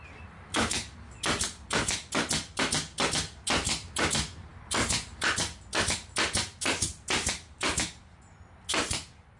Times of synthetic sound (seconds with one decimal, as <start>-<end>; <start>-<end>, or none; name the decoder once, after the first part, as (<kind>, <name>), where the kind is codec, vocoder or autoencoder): none